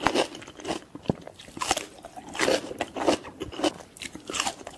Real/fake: fake